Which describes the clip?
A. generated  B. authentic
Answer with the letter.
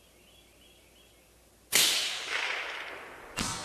B